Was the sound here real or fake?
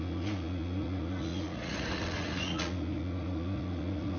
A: fake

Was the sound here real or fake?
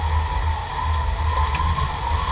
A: real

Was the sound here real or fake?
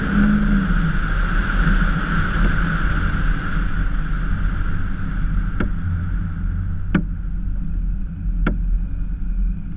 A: real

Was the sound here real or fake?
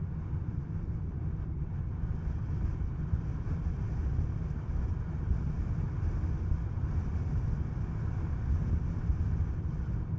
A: real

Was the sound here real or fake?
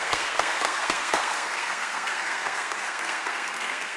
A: fake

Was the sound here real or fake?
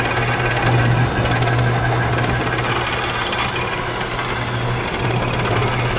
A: real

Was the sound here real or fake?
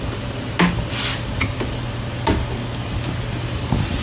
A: real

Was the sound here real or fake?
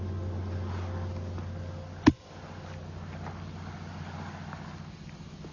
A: real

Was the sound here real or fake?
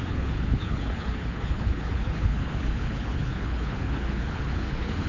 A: fake